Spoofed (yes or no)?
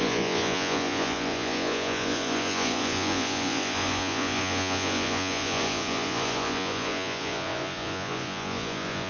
yes